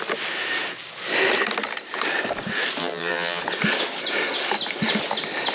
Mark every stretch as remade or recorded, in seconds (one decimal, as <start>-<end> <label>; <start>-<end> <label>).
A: 0.0-2.8 recorded; 2.8-3.4 remade; 3.4-5.5 recorded